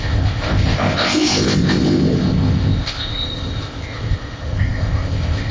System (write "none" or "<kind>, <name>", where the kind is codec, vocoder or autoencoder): codec, ZipCodec